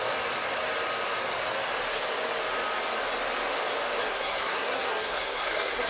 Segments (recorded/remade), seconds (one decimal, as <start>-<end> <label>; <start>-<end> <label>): 0.0-4.0 recorded; 4.0-5.9 remade